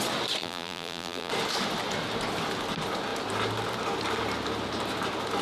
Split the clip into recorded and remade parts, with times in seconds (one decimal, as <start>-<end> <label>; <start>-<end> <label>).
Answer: 0.0-0.4 recorded; 0.4-1.3 remade; 1.3-5.4 recorded